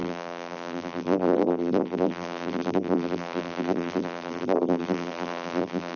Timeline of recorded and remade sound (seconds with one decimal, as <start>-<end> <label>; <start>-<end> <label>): 0.0-6.0 remade